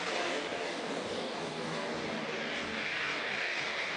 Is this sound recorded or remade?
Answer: remade